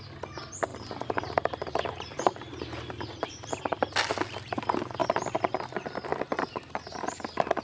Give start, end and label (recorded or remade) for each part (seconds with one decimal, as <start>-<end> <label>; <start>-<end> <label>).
0.0-0.7 recorded; 0.7-3.6 remade; 3.6-7.6 recorded